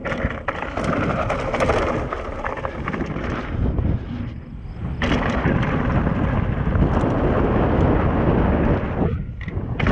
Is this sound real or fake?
real